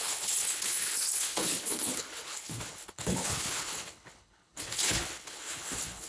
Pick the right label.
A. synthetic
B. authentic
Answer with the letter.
A